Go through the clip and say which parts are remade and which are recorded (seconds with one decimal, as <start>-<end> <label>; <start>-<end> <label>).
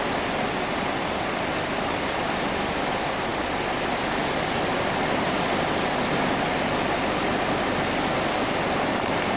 0.0-9.4 remade